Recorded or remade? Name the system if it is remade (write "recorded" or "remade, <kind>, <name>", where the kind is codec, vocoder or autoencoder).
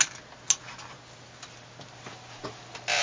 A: recorded